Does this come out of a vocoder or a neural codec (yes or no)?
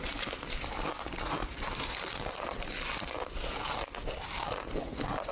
no